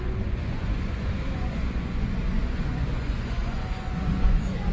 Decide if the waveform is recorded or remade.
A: remade